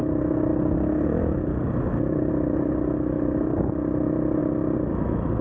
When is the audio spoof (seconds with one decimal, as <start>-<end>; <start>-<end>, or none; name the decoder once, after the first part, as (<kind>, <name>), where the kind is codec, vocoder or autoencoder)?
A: none